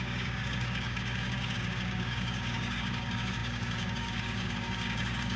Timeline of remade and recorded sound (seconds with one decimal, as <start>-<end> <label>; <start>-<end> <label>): 0.0-5.4 remade